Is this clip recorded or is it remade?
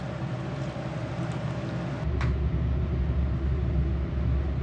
recorded